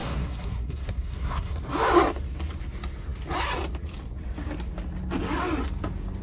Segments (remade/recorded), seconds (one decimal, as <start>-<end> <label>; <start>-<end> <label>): 0.0-1.6 remade; 1.6-6.2 recorded

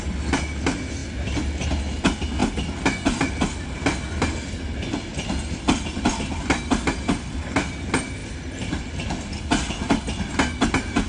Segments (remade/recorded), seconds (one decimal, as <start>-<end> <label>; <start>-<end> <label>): 0.0-11.1 recorded